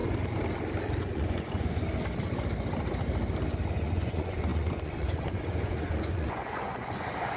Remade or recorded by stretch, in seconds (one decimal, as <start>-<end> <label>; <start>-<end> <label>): 0.0-1.0 recorded; 1.0-1.8 remade; 1.8-3.8 recorded; 3.8-7.4 remade